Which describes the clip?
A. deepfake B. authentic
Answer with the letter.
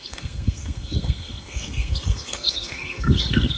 A